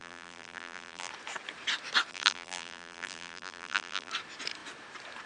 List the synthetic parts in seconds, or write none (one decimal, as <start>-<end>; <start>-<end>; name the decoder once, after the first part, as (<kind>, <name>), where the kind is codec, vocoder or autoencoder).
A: 0.0-1.1 (vocoder, BigVGAN v2); 2.1-4.1